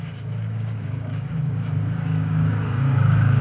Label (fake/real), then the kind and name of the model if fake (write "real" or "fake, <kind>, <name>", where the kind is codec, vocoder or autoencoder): fake, codec, DAC